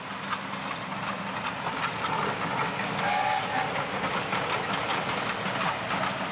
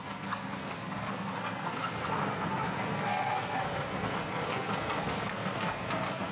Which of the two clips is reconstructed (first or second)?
second